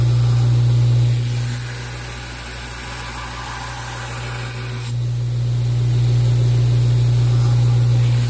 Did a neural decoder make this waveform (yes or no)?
no